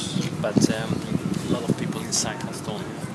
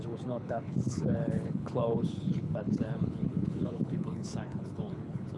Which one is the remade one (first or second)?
second